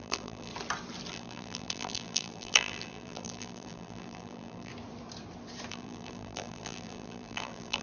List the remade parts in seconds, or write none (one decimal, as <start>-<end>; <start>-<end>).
0.0-0.5; 1.1-4.7; 5.7-7.8